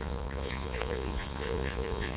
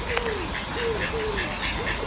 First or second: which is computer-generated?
first